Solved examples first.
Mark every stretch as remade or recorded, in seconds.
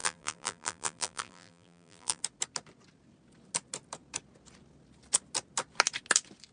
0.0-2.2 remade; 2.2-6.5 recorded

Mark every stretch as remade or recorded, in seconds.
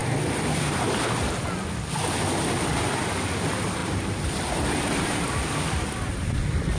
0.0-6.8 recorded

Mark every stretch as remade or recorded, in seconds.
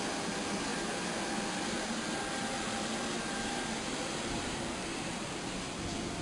0.0-6.2 recorded